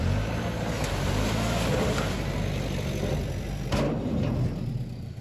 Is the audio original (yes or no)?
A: yes